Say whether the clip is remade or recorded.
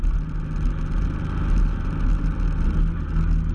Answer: recorded